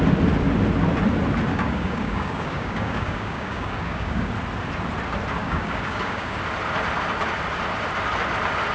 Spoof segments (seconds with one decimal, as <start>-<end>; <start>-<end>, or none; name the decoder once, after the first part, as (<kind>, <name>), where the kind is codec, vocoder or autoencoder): 1.5-4.3 (codec, DAC); 5.4-6.4